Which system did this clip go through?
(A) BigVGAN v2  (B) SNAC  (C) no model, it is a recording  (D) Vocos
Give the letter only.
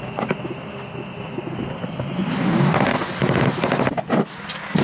C